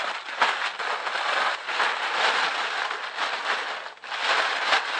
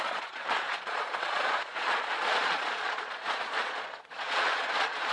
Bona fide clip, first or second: first